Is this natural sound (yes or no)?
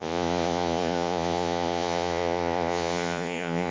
no